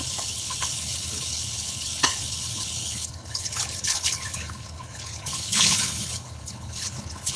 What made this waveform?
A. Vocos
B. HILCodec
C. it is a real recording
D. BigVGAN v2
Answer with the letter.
B